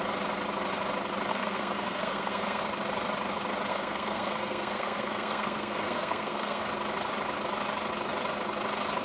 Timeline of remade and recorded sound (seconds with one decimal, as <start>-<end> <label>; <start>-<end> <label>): 0.0-1.3 recorded; 1.3-2.6 remade; 2.6-3.7 recorded; 3.7-6.6 remade; 6.6-9.0 recorded

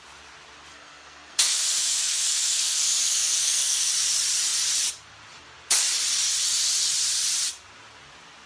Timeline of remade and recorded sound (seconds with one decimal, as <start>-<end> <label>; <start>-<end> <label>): 0.0-0.7 recorded; 0.7-3.9 remade; 3.9-8.5 recorded

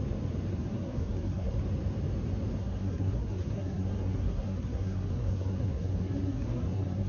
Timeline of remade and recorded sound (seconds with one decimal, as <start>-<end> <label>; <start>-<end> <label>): 0.0-0.5 recorded; 0.5-1.6 remade; 1.6-2.6 recorded; 2.6-7.1 remade

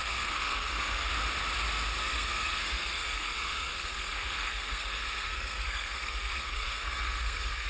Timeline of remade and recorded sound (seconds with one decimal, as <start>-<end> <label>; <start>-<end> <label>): 0.0-1.1 remade; 1.1-2.0 recorded; 2.0-7.7 remade

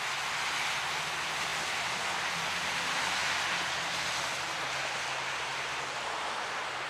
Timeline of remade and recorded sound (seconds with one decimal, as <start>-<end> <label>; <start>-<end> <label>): 0.0-6.9 recorded

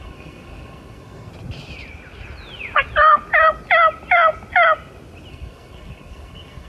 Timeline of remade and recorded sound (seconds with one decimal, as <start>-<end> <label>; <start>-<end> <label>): 0.0-1.3 remade; 1.3-5.3 recorded; 5.3-6.7 remade

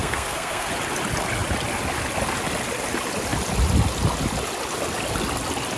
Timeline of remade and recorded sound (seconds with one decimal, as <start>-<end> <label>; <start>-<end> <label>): 0.0-0.7 remade; 0.7-5.8 recorded